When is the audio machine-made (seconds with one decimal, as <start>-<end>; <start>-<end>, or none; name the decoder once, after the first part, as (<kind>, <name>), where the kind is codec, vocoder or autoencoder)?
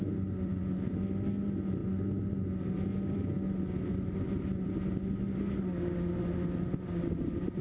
none